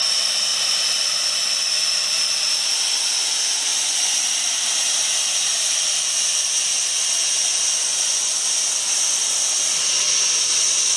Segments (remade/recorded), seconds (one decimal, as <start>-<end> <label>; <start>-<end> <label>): 0.0-3.7 recorded; 3.7-4.2 remade; 4.2-7.9 recorded; 7.9-8.4 remade; 8.4-11.0 recorded